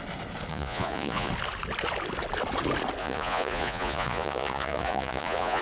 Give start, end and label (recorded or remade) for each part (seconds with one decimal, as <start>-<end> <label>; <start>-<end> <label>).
0.0-0.5 recorded; 0.5-1.3 remade; 1.3-3.0 recorded; 3.0-5.6 remade